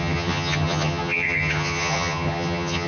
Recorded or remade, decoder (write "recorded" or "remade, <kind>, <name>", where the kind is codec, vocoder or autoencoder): remade, vocoder, HiFi-GAN